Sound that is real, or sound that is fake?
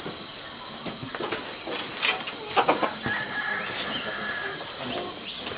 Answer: real